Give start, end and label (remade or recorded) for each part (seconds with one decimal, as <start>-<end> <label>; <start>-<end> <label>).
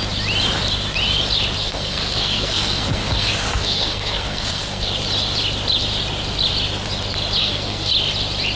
0.0-1.6 recorded; 1.6-4.9 remade; 4.9-7.4 recorded; 7.4-7.9 remade; 7.9-8.6 recorded